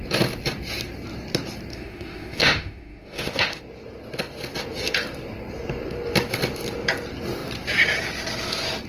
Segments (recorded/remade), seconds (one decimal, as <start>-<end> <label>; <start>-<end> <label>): 0.0-1.7 recorded; 1.7-3.6 remade; 3.6-8.9 recorded